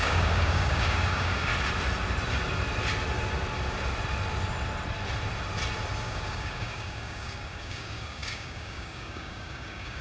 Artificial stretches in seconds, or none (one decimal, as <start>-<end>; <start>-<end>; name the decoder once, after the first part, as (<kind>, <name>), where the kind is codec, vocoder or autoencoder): 0.0-1.5 (codec, DAC); 6.0-10.0